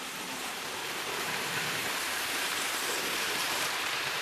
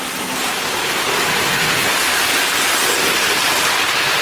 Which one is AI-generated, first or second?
first